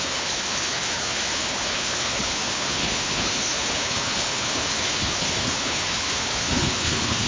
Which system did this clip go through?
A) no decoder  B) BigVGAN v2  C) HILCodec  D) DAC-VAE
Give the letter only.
C